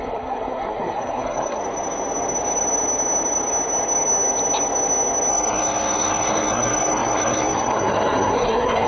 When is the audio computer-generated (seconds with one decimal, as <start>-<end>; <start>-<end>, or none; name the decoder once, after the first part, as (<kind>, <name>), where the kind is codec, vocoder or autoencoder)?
0.0-1.6 (codec, SNAC); 5.3-8.9